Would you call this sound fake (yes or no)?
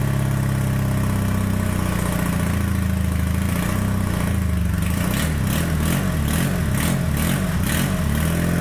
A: no